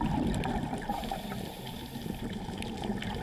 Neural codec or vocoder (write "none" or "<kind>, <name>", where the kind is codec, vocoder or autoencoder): vocoder, BigVGAN v2